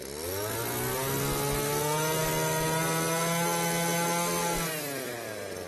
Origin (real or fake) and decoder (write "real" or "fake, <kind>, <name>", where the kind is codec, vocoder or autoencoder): real